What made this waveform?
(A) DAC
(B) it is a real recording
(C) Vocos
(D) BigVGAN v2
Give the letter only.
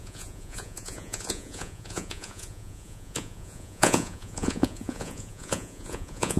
C